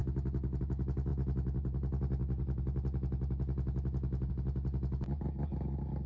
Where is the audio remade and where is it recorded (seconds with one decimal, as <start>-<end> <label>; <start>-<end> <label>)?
0.0-6.1 recorded